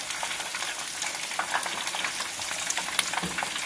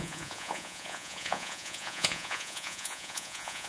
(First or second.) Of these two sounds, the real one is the first